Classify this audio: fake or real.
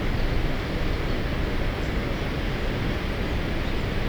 real